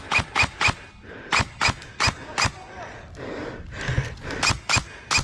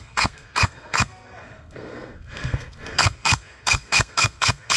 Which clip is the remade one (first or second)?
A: second